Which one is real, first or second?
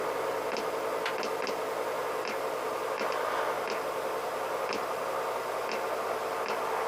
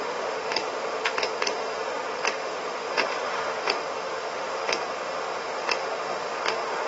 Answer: first